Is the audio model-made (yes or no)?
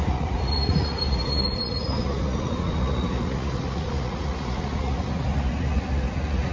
yes